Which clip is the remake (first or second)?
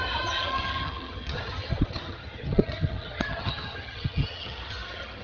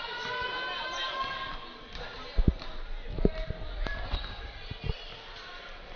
first